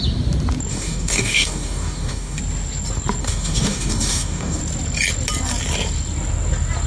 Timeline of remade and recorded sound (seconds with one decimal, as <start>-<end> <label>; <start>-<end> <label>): 0.0-0.7 recorded; 0.7-2.4 remade; 2.4-3.2 recorded; 3.2-4.6 remade; 4.6-6.9 recorded